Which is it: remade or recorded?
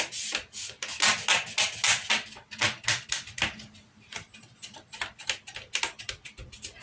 recorded